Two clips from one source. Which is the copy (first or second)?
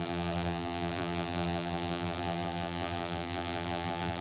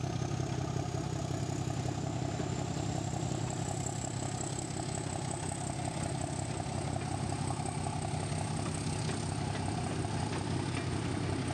first